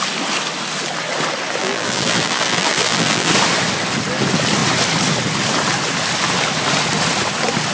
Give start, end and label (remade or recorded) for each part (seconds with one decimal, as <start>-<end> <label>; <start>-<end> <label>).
0.0-1.6 recorded; 1.6-3.3 remade; 3.3-7.7 recorded

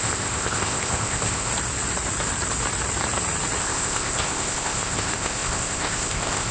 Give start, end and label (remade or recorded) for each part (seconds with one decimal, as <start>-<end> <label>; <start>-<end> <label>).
0.0-1.5 remade; 1.5-3.6 recorded; 3.6-6.5 remade

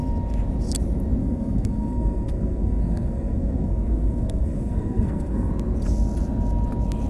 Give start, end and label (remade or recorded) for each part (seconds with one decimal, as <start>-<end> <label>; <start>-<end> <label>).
0.0-1.2 recorded; 1.2-5.5 remade; 5.5-7.1 recorded

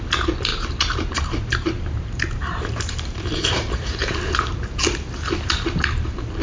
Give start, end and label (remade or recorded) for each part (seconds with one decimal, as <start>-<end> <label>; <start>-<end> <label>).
0.0-0.5 recorded; 0.5-4.1 remade; 4.1-6.4 recorded

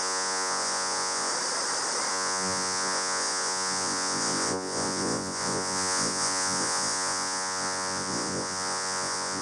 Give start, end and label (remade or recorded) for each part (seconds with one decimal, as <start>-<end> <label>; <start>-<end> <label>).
0.0-1.3 remade; 1.3-2.1 recorded; 2.1-9.4 remade

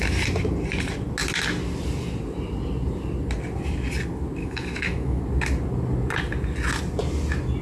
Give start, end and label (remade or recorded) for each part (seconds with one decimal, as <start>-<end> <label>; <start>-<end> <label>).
0.0-4.4 recorded; 4.4-5.2 remade; 5.2-7.6 recorded